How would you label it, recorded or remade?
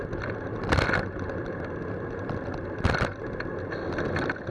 recorded